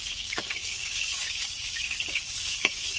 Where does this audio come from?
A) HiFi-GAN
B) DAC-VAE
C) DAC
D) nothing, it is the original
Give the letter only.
C